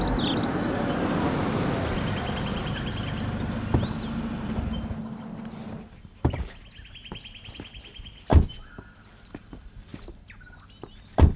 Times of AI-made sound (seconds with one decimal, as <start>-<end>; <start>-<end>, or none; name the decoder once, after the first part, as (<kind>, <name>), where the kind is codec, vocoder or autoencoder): none